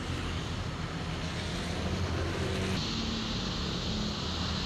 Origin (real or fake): real